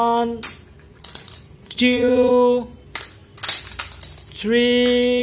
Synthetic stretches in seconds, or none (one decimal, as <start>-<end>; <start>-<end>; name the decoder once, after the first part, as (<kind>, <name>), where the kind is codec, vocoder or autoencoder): 0.9-2.3 (vocoder, Vocos)